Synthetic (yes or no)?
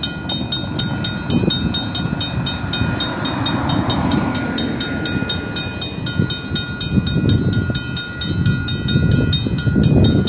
no